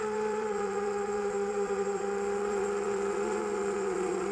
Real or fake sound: fake